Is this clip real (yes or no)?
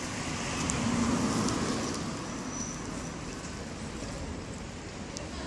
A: yes